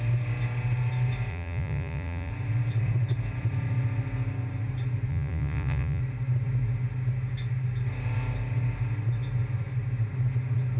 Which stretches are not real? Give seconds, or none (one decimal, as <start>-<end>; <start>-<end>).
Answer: 1.3-2.3; 5.1-6.0